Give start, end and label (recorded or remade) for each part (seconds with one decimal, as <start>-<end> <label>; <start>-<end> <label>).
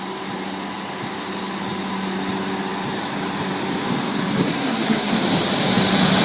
0.0-4.5 recorded; 4.5-5.1 remade; 5.1-6.2 recorded